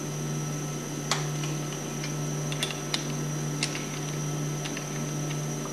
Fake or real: real